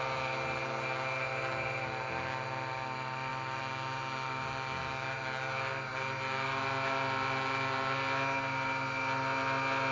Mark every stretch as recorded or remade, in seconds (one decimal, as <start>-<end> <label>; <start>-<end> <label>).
0.0-9.9 recorded